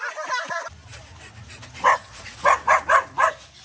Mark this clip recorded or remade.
recorded